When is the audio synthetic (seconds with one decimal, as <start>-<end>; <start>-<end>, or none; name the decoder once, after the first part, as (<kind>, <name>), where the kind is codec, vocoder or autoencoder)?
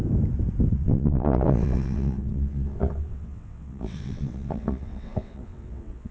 0.7-6.1 (vocoder, WaveNeXt)